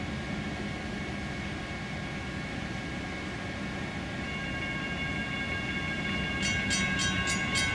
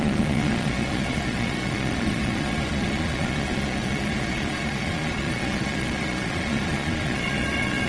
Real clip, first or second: first